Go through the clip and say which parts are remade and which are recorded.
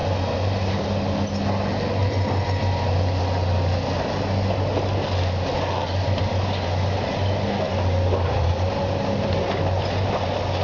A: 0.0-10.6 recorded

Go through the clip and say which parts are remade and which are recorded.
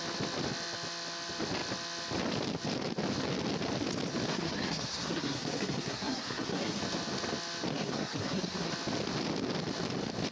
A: 0.0-4.3 recorded; 4.3-6.8 remade; 6.8-7.7 recorded; 7.7-8.7 remade; 8.7-10.3 recorded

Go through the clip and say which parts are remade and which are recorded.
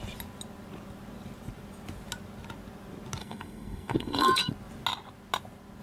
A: 0.0-3.2 recorded; 3.2-4.5 remade; 4.5-5.8 recorded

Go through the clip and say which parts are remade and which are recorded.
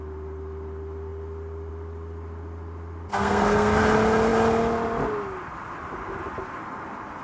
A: 0.0-3.1 recorded; 3.1-3.8 remade; 3.8-7.2 recorded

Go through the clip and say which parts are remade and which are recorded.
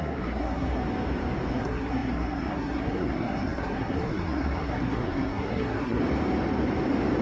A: 0.0-0.8 remade; 0.8-1.5 recorded; 1.5-6.0 remade; 6.0-7.2 recorded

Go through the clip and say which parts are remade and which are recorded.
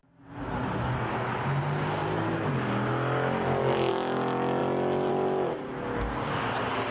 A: 0.0-6.9 recorded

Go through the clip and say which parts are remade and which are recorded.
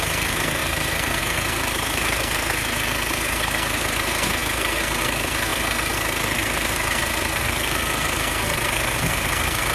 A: 0.0-9.7 remade